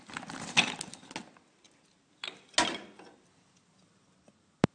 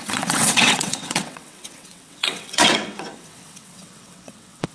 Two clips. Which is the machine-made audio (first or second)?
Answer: second